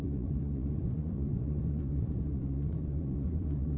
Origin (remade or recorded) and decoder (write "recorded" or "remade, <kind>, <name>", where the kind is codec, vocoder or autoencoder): remade, vocoder, Vocos